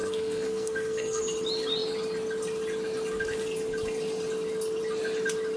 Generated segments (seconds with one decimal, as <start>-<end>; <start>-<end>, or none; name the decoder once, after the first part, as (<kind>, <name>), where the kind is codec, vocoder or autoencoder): 0.0-1.2 (codec, SNAC)